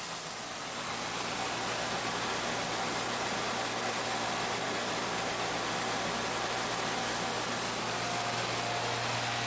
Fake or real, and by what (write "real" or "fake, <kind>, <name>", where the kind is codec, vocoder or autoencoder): real